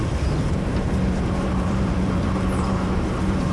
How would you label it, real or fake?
fake